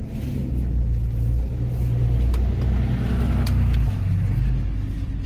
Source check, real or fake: real